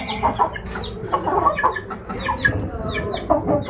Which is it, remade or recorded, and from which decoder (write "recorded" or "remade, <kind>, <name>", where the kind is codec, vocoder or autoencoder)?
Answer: recorded